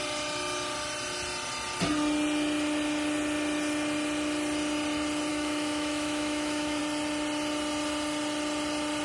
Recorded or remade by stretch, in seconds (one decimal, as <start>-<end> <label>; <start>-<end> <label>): 0.0-5.3 recorded; 5.3-6.8 remade; 6.8-9.0 recorded